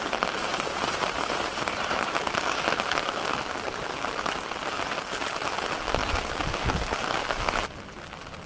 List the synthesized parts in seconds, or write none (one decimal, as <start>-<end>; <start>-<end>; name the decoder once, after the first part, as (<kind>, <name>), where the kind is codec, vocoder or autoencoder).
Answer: 0.5-2.1 (vocoder, BigVGAN v2)